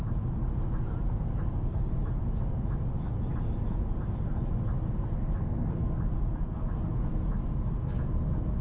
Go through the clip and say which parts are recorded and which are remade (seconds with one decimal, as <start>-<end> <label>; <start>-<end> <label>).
0.0-5.4 recorded; 5.4-6.0 remade; 6.0-8.6 recorded

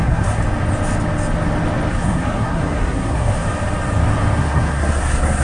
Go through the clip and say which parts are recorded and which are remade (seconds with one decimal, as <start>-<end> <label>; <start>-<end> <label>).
0.0-0.4 remade; 0.4-1.9 recorded; 1.9-3.3 remade; 3.3-4.4 recorded; 4.4-5.4 remade

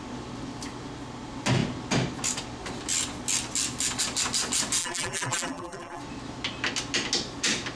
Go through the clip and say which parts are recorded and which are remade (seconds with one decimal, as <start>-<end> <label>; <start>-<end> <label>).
0.0-4.8 recorded; 4.8-6.0 remade; 6.0-7.8 recorded

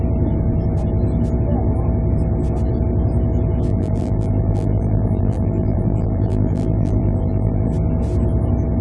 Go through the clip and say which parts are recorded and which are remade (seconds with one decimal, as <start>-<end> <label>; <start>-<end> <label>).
0.0-3.7 recorded; 3.7-7.7 remade; 7.7-8.8 recorded